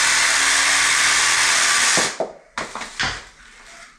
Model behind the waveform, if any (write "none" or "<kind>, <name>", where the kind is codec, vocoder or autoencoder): none